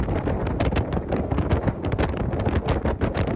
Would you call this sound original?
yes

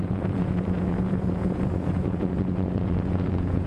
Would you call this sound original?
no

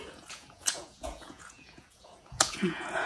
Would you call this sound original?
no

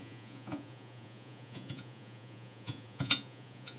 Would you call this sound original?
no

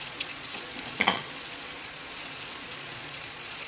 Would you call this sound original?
no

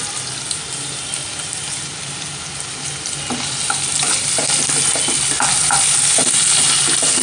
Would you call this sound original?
yes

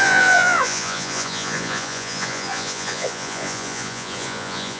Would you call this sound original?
no